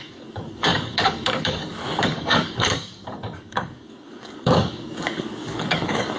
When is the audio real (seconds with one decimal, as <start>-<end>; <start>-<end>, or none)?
none